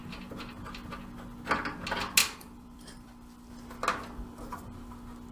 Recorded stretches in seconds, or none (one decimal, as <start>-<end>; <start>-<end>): 0.0-2.2; 3.5-5.3